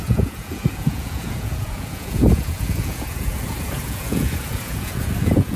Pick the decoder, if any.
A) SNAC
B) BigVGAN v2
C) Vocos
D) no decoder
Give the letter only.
C